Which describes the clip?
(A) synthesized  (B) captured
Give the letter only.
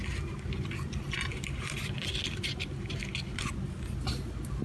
B